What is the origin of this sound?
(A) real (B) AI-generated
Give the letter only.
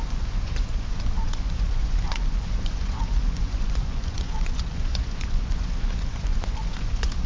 B